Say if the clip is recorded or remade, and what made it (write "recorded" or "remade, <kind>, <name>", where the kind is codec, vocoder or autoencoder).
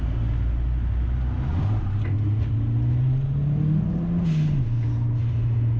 recorded